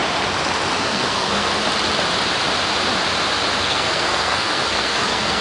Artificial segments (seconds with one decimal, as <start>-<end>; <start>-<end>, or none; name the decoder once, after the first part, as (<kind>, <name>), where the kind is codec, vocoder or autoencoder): 0.8-1.5 (codec, SNAC); 3.6-5.4